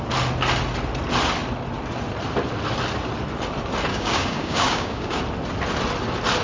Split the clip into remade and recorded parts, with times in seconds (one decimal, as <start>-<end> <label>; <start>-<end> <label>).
0.0-3.9 recorded; 3.9-5.2 remade; 5.2-6.4 recorded